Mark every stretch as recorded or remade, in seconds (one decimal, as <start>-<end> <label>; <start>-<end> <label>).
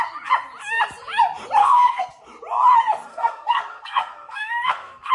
0.0-1.6 recorded; 1.6-2.1 remade; 2.1-3.1 recorded; 3.1-5.1 remade